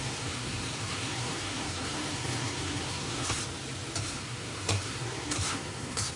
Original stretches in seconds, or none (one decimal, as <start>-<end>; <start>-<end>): 3.4-4.0